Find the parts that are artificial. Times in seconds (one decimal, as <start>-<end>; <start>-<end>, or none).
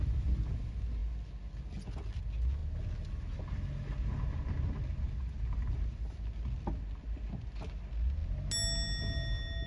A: none